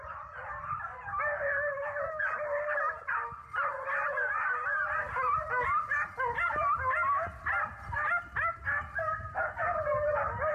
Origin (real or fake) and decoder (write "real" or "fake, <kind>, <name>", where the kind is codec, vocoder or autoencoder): real